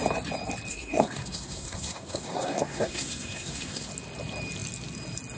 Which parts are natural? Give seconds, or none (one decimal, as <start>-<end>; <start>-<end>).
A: 0.0-0.7; 3.9-5.4